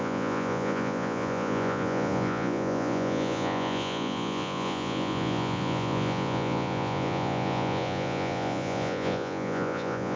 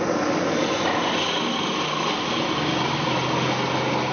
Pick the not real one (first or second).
first